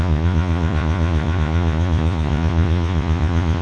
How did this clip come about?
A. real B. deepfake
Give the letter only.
B